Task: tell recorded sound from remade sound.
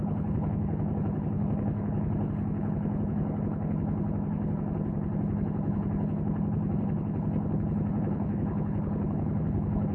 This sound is remade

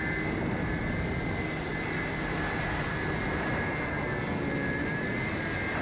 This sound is recorded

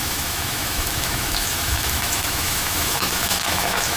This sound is remade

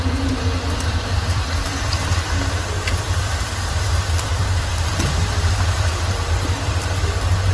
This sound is remade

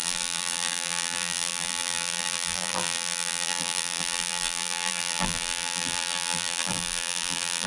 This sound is remade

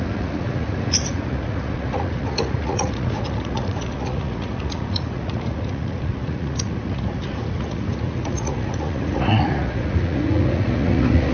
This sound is remade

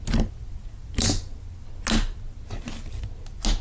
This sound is recorded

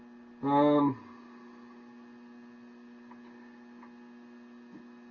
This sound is recorded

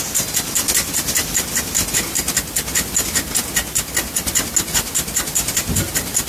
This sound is recorded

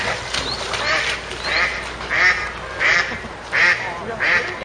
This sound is recorded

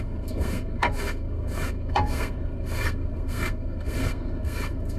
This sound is remade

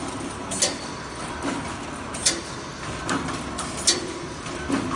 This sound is recorded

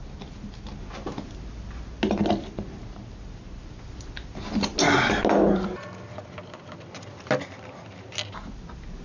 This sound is recorded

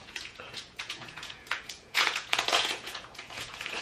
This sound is remade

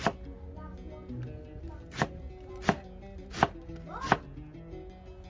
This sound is recorded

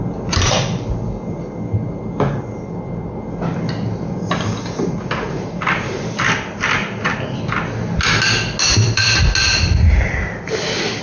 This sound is recorded